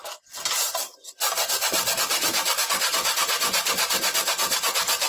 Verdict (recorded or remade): recorded